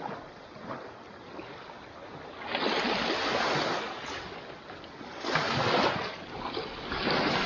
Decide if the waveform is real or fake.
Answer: real